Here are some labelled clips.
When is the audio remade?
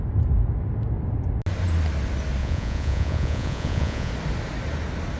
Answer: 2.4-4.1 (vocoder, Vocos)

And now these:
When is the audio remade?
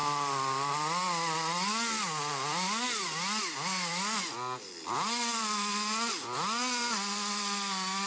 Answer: none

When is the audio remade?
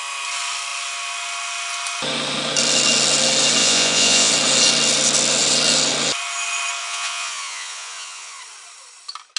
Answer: 3.6-4.3 (vocoder, Vocos); 6.8-8.4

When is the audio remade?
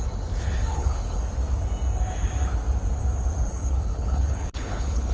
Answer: 0.7-1.2 (codec, HILCodec); 3.5-5.1